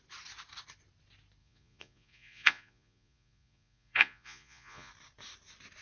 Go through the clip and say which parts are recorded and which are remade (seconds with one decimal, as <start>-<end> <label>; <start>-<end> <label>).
0.0-1.4 recorded; 1.4-4.9 remade; 4.9-5.8 recorded